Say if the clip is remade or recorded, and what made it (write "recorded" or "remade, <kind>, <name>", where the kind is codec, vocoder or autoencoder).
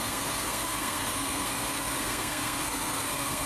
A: remade, codec, SNAC